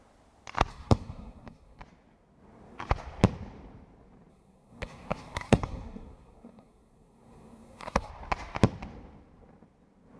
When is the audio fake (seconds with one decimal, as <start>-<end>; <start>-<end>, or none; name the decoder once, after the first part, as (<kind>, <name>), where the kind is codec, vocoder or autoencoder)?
0.7-1.8 (codec, SNAC); 4.3-8.1